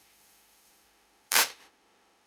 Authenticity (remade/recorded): remade